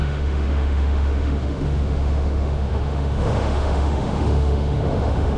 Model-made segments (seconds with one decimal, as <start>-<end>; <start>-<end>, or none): 0.0-5.4

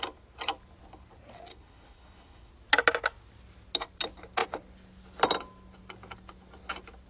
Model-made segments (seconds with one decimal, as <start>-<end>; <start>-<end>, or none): 1.5-2.5